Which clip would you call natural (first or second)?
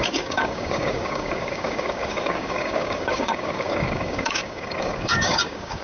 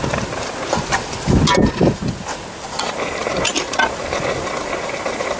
second